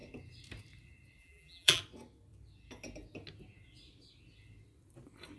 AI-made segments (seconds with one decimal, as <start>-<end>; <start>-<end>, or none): 1.2-1.8